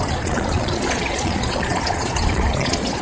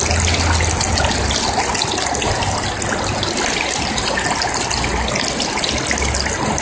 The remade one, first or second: first